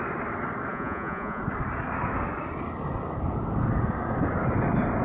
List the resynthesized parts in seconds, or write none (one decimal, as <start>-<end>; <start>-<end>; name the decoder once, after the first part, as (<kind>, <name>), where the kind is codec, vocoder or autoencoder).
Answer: 0.7-1.4 (vocoder, Vocos)